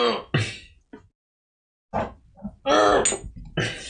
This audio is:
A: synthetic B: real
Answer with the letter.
B